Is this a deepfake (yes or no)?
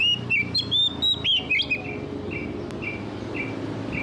no